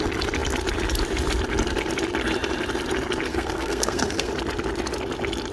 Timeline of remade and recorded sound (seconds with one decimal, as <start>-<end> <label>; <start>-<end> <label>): 0.0-3.3 recorded; 3.3-4.3 remade; 4.3-5.5 recorded